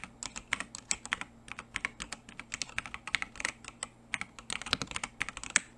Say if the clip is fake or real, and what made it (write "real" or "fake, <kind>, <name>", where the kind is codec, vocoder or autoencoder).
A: real